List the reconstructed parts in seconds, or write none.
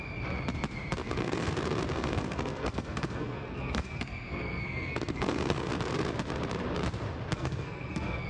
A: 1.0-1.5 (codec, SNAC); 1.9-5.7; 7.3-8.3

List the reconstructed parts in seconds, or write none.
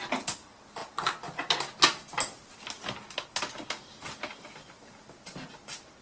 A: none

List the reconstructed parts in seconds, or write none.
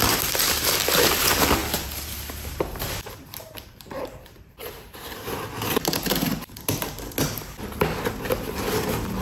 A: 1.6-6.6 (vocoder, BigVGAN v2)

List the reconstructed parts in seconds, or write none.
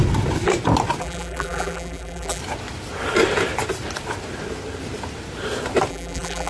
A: 1.0-2.4 (vocoder, BigVGAN v2); 5.9-6.5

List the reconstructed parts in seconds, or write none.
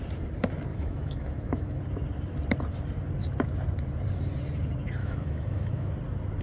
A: 0.7-1.8 (autoencoder, DAC-VAE); 5.0-5.9